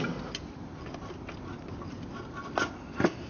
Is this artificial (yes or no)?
no